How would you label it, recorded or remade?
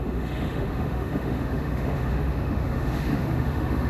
remade